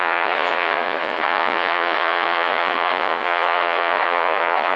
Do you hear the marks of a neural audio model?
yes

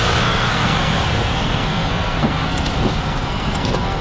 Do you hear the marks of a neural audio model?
yes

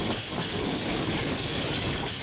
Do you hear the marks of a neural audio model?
yes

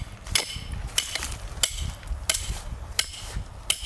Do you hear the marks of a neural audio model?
no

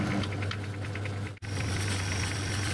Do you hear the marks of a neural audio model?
no